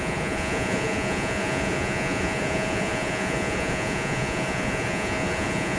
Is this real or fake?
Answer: fake